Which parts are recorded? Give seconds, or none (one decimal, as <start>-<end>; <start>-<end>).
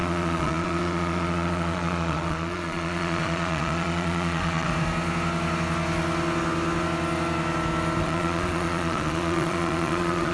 4.7-8.0